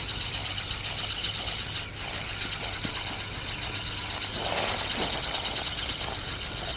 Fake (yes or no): no